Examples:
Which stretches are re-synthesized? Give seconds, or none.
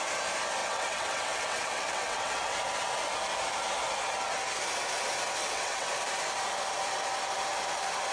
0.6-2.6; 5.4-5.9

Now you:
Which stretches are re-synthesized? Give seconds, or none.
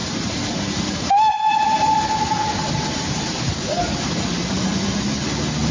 0.0-2.0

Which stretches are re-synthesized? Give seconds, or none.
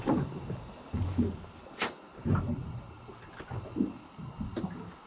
none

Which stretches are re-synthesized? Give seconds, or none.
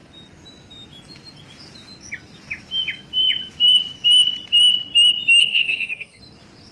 5.4-6.2